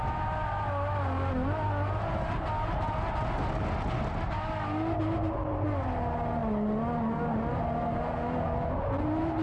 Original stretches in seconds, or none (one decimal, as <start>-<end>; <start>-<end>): 0.0-9.4